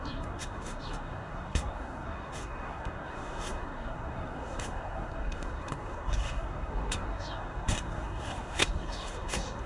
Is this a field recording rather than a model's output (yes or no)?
no